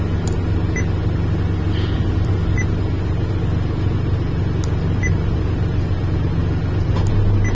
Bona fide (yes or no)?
yes